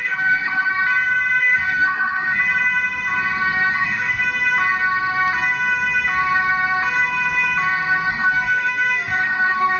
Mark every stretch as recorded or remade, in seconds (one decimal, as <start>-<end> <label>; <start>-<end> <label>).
0.0-0.7 remade; 0.7-1.4 recorded; 1.4-2.4 remade; 2.4-3.7 recorded; 3.7-4.2 remade; 4.2-8.1 recorded; 8.1-9.8 remade